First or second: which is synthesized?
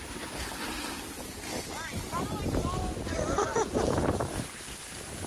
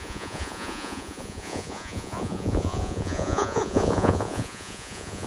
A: second